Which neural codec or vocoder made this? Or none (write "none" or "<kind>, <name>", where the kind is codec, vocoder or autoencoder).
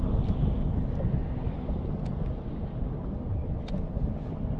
none